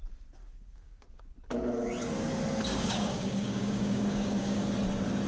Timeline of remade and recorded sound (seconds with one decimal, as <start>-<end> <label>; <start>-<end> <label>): 0.0-0.4 recorded; 0.4-1.2 remade; 1.2-2.7 recorded; 2.7-4.7 remade; 4.7-5.3 recorded